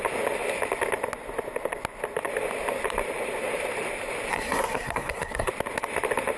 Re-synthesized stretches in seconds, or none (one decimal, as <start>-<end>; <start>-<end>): 4.3-5.5